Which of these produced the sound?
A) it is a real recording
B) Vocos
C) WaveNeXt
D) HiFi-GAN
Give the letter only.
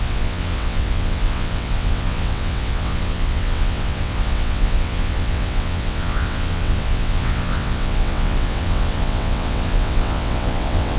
C